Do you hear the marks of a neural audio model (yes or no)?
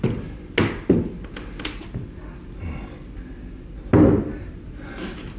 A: no